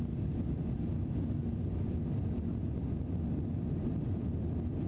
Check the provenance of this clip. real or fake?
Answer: real